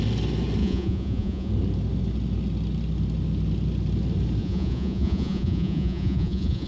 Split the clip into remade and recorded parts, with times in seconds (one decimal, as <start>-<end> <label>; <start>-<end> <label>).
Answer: 0.0-0.6 recorded; 0.6-1.5 remade; 1.5-4.4 recorded; 4.4-6.7 remade